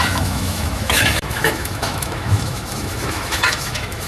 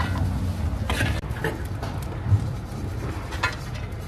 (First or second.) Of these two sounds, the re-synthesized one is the first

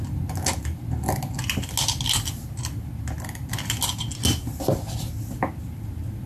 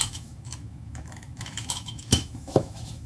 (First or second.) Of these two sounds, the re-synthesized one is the second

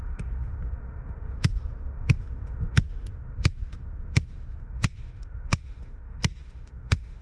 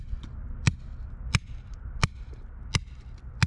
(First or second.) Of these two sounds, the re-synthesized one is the first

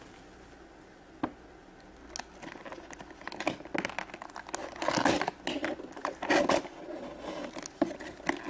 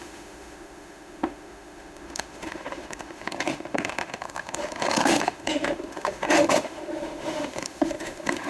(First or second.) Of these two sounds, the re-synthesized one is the second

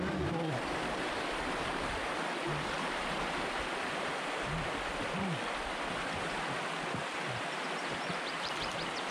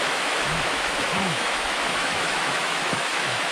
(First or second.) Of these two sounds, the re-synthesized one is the second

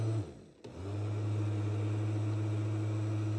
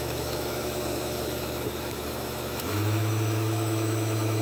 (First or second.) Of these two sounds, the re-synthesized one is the second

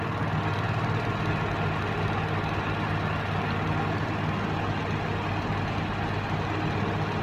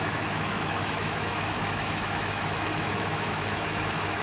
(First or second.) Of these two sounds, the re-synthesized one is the second